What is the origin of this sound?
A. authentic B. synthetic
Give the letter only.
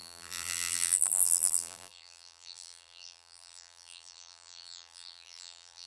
B